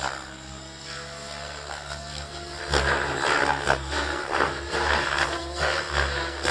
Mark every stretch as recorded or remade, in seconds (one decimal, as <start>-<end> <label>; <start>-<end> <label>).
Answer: 0.0-2.6 remade; 2.6-3.4 recorded; 3.4-6.5 remade